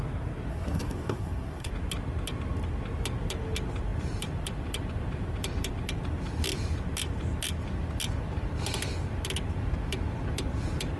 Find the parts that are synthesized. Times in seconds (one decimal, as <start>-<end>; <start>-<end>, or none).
0.5-1.7